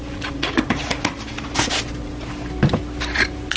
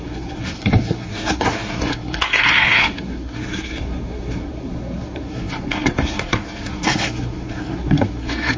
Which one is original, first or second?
first